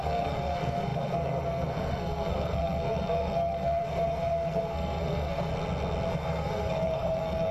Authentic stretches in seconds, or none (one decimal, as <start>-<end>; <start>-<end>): 5.5-6.1